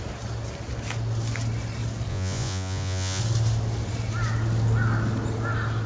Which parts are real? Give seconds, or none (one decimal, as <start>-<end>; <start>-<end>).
0.0-2.1; 3.2-5.9